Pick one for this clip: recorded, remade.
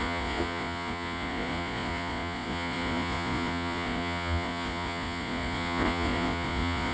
remade